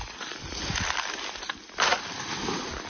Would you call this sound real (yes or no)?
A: yes